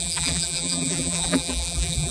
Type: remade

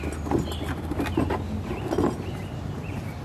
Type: recorded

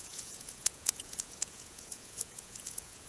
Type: remade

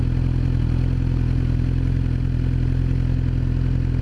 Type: recorded